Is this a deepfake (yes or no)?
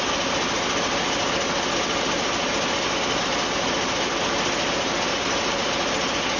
no